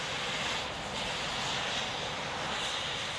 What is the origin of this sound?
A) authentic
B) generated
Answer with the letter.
A